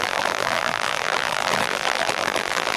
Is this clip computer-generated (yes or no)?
yes